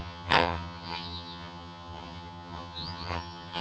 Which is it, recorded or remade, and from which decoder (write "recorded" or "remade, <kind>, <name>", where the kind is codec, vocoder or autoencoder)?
remade, vocoder, HiFi-GAN